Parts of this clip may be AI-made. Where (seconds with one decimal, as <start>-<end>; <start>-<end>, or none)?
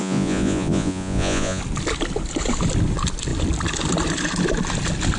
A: 0.0-1.6